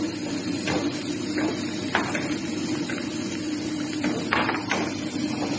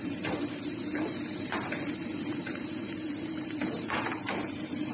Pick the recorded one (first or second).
first